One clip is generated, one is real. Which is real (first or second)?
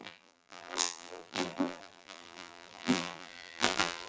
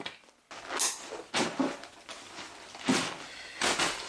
second